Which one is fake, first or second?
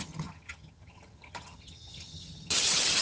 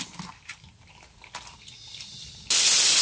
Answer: first